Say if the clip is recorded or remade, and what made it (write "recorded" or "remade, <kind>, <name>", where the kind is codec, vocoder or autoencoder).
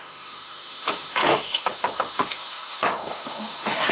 remade, autoencoder, DAC-VAE